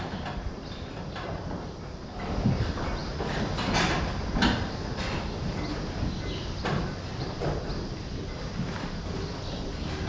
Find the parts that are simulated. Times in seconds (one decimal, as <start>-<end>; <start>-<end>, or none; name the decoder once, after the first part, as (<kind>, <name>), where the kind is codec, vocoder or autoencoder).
none